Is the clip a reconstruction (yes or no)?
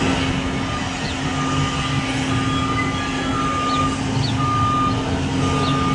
no